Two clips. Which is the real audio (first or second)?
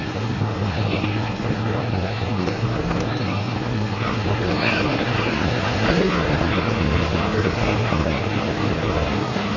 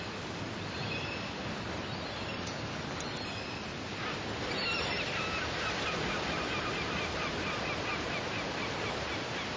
second